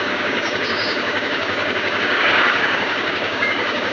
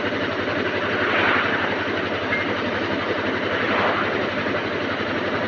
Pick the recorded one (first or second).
second